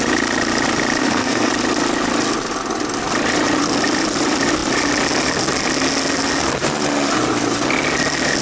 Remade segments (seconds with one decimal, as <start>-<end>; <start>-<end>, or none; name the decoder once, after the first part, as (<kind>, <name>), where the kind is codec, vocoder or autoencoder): 1.0-1.5 (codec, SNAC)